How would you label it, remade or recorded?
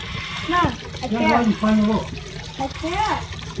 recorded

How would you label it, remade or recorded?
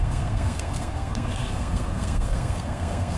remade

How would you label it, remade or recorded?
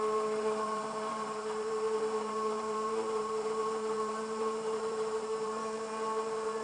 remade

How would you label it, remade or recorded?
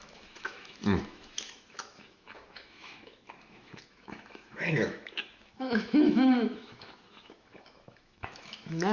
remade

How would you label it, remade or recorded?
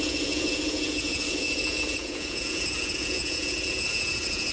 remade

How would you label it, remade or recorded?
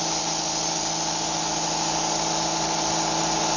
recorded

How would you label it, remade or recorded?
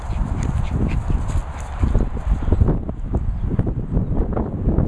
recorded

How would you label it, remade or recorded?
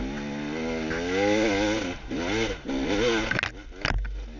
recorded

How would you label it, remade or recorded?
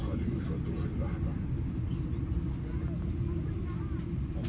recorded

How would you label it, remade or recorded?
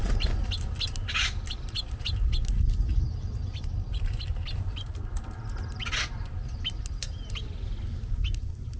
recorded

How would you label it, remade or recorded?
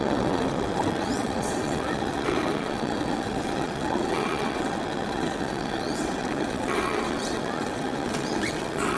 remade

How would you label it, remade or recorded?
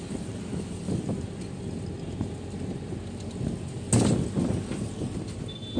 recorded